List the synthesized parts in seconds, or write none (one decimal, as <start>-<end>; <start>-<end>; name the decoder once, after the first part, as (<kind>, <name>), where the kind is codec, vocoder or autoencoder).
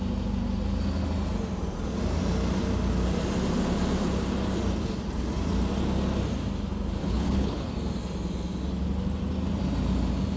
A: 7.0-7.7 (codec, HILCodec)